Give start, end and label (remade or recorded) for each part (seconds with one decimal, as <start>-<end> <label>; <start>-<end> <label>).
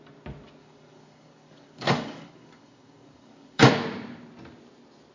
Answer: 0.0-0.6 recorded; 0.6-3.7 remade; 3.7-5.1 recorded